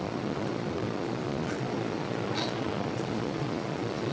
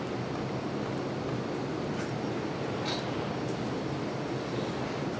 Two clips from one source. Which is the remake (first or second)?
first